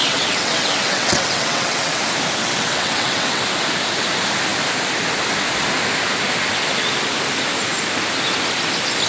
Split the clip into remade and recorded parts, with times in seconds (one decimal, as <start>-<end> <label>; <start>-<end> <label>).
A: 0.0-2.0 remade; 2.0-2.4 recorded; 2.4-3.4 remade; 3.4-9.1 recorded